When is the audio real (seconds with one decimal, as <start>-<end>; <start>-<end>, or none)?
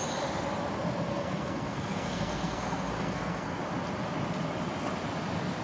0.0-1.1; 3.6-5.6